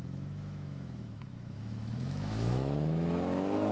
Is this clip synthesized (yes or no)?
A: yes